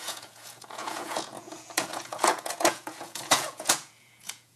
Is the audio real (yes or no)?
no